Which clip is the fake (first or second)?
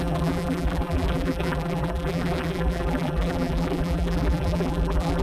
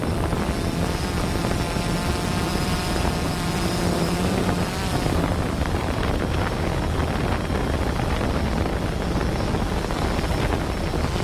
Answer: first